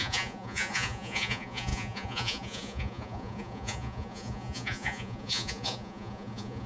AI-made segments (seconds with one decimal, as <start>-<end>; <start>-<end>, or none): 0.0-6.7